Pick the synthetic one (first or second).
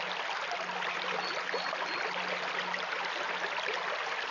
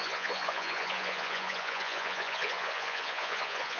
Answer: second